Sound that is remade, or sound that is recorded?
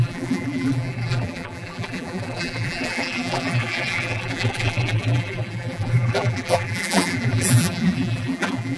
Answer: remade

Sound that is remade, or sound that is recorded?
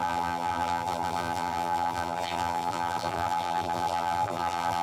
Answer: remade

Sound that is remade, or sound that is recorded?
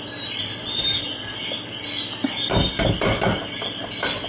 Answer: recorded